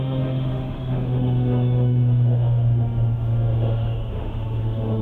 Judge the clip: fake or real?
fake